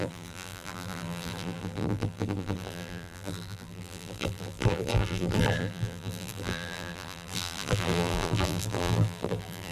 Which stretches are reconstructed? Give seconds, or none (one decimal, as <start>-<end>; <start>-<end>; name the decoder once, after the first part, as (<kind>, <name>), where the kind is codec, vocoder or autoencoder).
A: 0.0-9.7 (vocoder, BigVGAN v2)